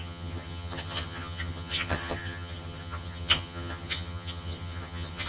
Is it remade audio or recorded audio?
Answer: remade